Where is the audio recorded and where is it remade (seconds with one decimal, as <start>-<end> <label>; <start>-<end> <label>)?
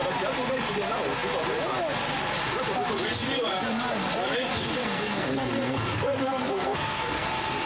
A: 0.0-4.8 recorded; 4.8-7.3 remade; 7.3-7.7 recorded